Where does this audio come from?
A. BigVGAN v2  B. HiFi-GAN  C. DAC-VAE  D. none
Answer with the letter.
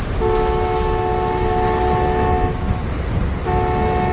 D